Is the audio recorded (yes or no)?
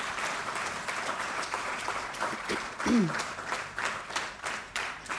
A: no